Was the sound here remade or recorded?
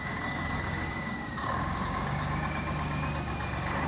remade